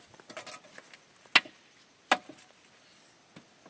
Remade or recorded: recorded